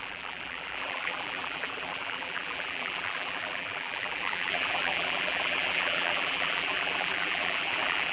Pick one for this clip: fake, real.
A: fake